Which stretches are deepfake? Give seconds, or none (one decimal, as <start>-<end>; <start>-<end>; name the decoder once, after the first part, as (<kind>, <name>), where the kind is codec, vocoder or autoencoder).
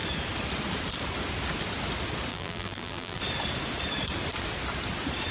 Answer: 2.3-3.2 (vocoder, BigVGAN v2)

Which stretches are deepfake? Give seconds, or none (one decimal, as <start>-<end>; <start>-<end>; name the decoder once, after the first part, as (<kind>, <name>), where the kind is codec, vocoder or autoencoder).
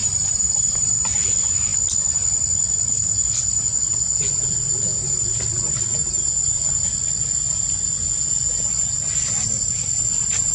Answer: 0.0-0.9 (vocoder, BigVGAN v2)